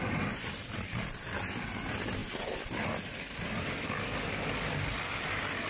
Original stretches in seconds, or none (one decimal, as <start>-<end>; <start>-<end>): 0.0-5.7